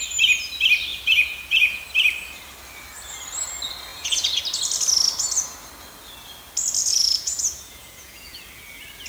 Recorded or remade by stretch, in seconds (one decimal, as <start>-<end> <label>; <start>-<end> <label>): 0.0-0.9 recorded; 0.9-1.8 remade; 1.8-3.9 recorded; 3.9-4.4 remade; 4.4-6.8 recorded; 6.8-8.4 remade; 8.4-9.1 recorded

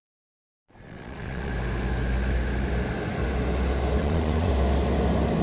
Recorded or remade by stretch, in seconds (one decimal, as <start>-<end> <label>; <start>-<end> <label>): 0.0-1.5 remade; 1.5-4.0 recorded; 4.0-4.5 remade; 4.5-5.4 recorded

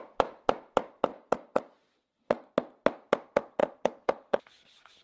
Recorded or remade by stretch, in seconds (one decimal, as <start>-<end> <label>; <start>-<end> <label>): 0.0-1.1 recorded; 1.1-2.5 remade; 2.5-3.6 recorded; 3.6-4.4 remade; 4.4-5.0 recorded